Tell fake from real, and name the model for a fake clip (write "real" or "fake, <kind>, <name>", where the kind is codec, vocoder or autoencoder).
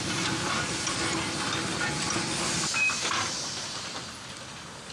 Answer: real